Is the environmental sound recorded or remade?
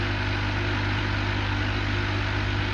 recorded